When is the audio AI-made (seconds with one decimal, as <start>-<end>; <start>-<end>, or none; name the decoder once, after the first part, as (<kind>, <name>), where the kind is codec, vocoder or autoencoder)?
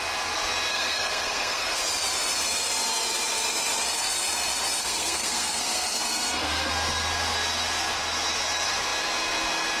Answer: 0.7-1.8 (codec, SNAC); 4.8-6.7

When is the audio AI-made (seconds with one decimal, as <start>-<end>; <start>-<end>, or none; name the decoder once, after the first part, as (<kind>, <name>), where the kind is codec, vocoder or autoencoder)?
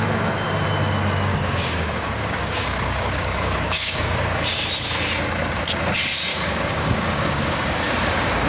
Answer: 1.3-4.7 (codec, DAC); 6.3-7.9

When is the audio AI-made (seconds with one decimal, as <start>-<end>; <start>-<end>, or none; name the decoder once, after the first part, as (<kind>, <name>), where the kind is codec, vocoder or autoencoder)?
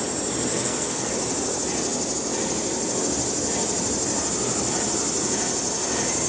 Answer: 0.5-1.1 (codec, SNAC)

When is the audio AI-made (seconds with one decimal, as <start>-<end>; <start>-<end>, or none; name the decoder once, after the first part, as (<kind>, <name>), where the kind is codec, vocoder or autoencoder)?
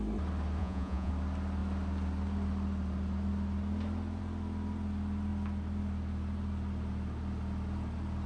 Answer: 0.6-1.1 (vocoder, Vocos)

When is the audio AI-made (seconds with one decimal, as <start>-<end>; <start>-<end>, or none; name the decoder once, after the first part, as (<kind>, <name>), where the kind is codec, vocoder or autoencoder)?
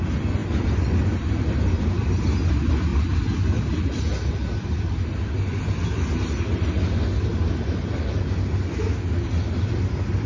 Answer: none